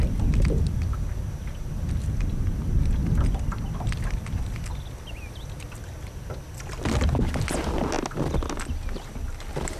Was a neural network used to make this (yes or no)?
no